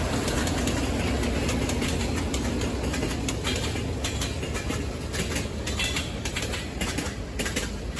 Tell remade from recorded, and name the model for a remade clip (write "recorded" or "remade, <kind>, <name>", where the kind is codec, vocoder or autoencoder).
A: recorded